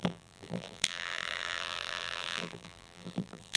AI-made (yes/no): yes